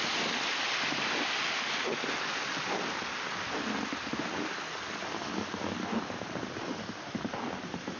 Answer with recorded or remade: recorded